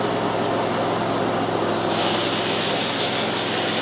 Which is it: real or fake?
real